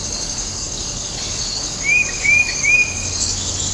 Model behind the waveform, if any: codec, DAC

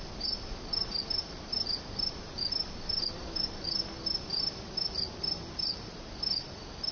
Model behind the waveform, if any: none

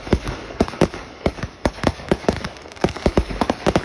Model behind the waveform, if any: codec, DAC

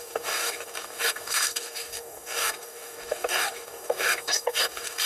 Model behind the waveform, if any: codec, DAC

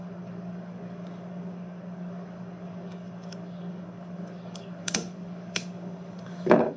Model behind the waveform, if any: codec, DAC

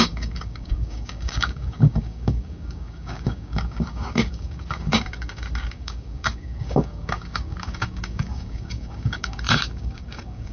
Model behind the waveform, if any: codec, DAC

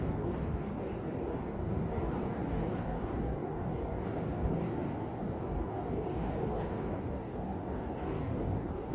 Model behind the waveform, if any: codec, DAC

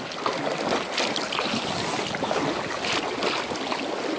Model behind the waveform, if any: none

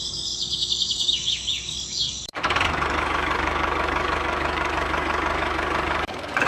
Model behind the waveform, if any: codec, DAC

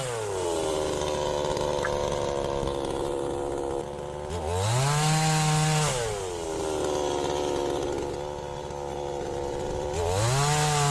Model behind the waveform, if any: none